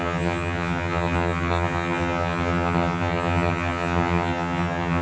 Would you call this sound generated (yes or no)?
yes